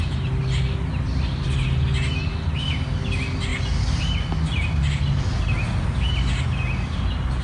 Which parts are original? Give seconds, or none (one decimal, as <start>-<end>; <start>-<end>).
0.0-7.4